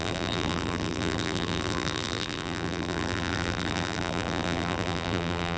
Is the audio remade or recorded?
remade